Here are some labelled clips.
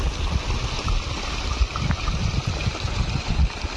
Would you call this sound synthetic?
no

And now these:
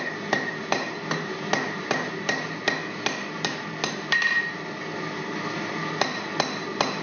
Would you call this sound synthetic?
no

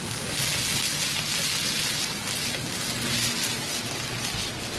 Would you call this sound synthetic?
no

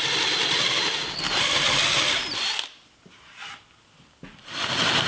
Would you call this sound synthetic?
no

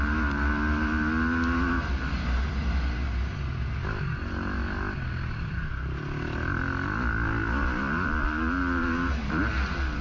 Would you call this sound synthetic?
no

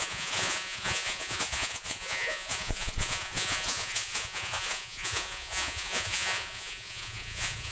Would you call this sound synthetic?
yes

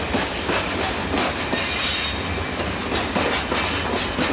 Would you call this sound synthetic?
no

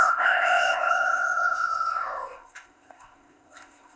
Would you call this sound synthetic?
yes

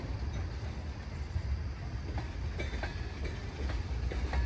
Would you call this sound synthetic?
no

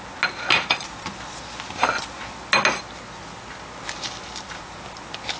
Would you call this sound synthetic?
no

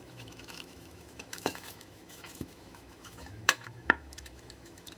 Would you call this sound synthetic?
yes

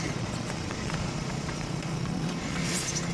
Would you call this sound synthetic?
yes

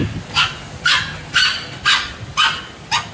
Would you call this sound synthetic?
no